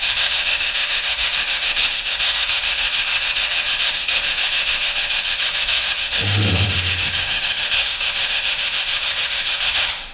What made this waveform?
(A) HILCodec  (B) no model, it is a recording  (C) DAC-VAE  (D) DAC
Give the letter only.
C